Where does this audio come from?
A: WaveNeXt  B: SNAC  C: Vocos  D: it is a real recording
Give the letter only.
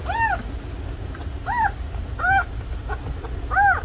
D